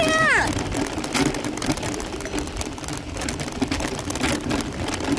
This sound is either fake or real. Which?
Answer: real